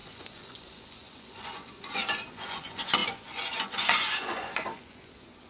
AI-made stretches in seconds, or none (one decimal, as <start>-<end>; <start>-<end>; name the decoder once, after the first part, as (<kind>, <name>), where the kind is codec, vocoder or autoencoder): 0.0-5.5 (vocoder, Vocos)

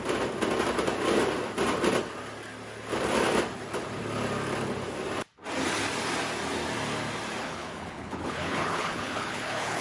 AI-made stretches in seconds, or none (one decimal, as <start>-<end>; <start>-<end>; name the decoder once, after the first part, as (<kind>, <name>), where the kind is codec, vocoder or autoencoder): 7.4-9.8 (codec, HILCodec)

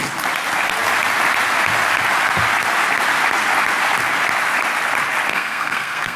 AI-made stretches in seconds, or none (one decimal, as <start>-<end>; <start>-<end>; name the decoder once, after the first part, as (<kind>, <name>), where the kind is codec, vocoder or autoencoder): 5.3-6.2 (codec, SNAC)

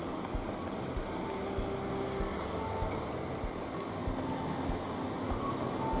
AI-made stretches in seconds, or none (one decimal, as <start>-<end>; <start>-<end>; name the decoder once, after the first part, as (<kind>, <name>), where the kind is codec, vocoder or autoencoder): none

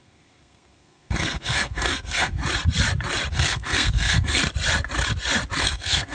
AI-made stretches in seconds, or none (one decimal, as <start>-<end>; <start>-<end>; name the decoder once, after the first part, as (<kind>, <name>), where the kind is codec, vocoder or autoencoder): 0.0-2.4 (codec, SNAC); 3.3-4.4; 5.6-6.1

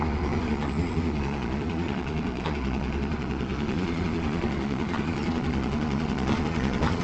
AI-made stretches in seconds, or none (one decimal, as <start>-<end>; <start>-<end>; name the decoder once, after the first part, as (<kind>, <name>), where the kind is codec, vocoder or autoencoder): 0.0-7.0 (vocoder, Vocos)

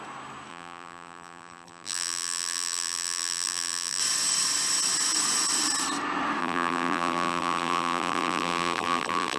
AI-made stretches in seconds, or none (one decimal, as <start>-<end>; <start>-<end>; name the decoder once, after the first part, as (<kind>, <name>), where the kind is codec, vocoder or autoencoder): 0.5-4.0 (vocoder, BigVGAN v2); 6.4-9.4

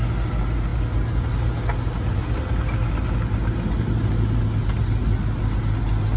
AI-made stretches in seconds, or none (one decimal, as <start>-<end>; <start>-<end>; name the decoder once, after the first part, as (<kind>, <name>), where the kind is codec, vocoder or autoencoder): none